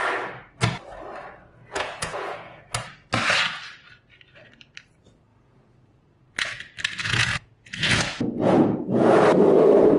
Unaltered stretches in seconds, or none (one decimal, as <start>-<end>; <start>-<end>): 0.0-1.6; 2.6-5.3; 6.6-7.0; 9.2-10.0